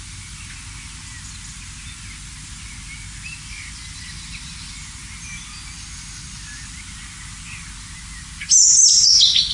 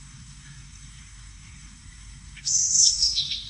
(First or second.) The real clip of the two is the first